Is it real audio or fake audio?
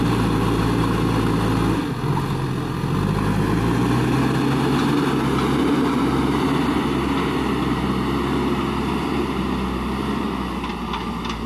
real